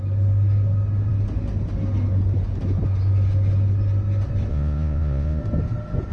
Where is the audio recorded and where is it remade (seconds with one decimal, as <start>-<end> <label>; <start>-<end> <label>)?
0.0-4.5 recorded; 4.5-5.4 remade; 5.4-6.1 recorded